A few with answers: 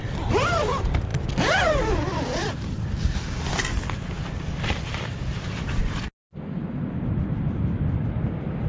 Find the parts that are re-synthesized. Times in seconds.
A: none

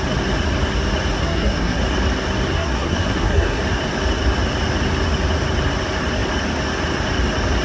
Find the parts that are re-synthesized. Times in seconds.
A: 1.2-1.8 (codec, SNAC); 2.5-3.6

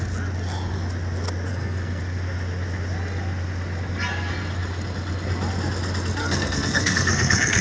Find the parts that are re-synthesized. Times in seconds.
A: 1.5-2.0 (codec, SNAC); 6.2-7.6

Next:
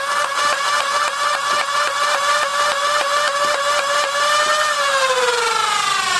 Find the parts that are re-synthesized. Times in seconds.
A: none

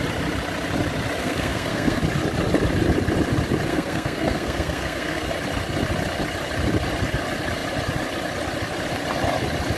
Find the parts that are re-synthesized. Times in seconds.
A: 1.2-2.0 (codec, SNAC); 3.7-5.3

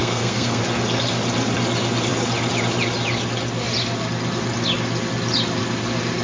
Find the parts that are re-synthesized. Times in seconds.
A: 0.0-0.6 (codec, SNAC)